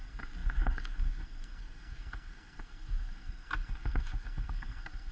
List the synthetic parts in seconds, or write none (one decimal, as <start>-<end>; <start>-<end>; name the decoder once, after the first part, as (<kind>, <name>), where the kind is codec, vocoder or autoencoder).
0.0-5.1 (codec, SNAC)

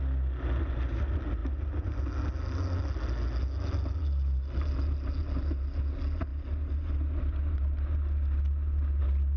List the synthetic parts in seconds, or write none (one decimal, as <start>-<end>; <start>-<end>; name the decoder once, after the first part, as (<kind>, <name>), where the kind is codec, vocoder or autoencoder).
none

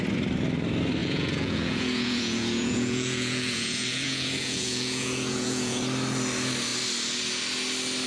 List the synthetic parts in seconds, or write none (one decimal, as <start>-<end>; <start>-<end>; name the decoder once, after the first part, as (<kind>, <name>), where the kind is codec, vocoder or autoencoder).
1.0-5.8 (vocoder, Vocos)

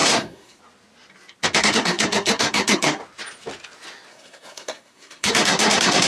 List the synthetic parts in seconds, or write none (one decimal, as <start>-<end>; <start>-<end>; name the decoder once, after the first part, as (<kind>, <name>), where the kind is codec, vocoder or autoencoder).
0.0-0.6 (codec, SNAC); 1.6-3.0; 4.1-6.1